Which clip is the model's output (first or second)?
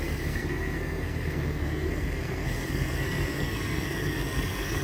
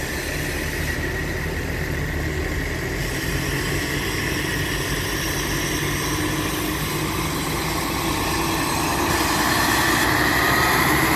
first